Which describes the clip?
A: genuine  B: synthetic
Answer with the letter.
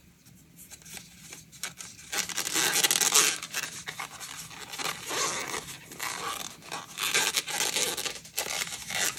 A